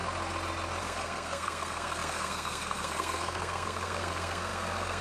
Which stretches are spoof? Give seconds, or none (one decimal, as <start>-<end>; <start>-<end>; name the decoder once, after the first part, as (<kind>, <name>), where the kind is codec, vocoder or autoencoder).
0.8-5.0 (codec, SNAC)